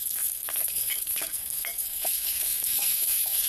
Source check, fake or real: fake